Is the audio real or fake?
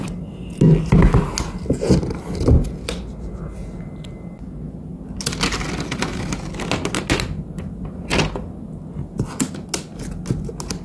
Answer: real